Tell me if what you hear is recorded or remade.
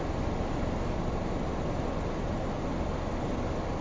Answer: recorded